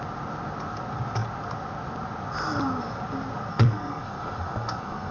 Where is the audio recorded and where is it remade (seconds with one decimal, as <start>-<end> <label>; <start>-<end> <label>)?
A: 0.0-3.5 recorded; 3.5-5.1 remade